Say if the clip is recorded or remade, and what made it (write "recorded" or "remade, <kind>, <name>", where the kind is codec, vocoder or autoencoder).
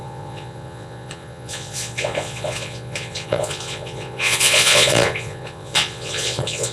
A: remade, vocoder, Vocos